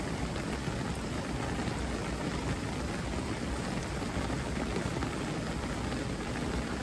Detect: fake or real real